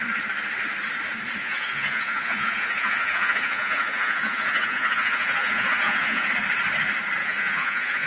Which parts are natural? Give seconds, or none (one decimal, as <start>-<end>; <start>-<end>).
0.0-1.4; 6.3-7.2